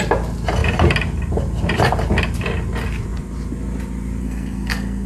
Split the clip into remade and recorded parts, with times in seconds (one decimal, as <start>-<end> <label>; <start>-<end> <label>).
0.0-4.2 recorded; 4.2-5.1 remade